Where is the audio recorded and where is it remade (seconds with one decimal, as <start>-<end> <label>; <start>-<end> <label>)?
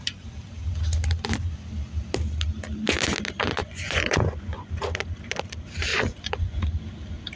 0.0-3.6 recorded; 3.6-4.7 remade; 4.7-5.9 recorded; 5.9-6.6 remade; 6.6-7.4 recorded